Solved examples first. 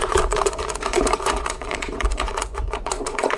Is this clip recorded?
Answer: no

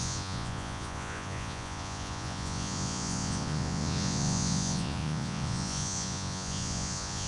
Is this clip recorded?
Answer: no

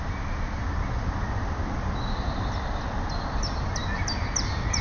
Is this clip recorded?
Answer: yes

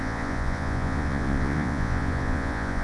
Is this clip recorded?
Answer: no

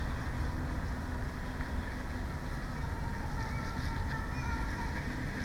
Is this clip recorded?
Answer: yes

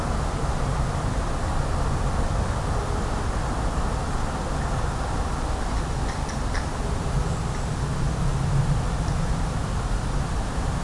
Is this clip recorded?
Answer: yes